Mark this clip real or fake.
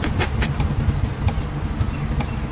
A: real